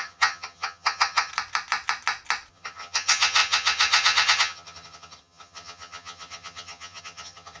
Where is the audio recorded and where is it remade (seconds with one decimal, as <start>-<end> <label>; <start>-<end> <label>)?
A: 0.0-1.3 remade; 1.3-2.5 recorded; 2.5-7.6 remade